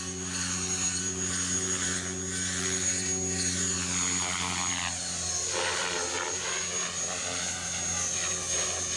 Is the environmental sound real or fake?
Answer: real